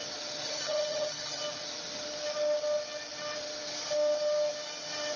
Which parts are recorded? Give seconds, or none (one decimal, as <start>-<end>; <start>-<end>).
0.0-0.4; 1.4-5.2